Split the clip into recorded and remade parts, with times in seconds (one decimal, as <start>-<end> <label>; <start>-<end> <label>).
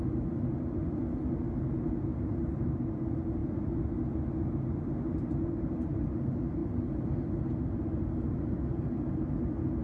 0.0-9.8 recorded